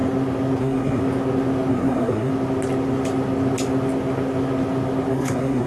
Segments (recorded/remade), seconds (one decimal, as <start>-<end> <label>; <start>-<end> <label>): 0.0-0.6 recorded; 0.6-1.0 remade; 1.0-1.7 recorded; 1.7-2.3 remade; 2.3-5.1 recorded; 5.1-5.7 remade